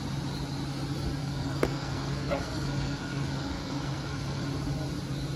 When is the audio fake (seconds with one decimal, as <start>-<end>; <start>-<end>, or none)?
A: 1.2-4.4